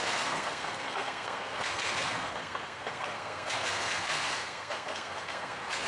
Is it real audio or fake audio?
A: fake